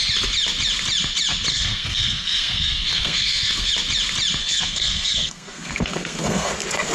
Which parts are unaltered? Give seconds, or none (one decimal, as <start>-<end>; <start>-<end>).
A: 0.0-1.5; 3.7-4.4; 6.5-6.9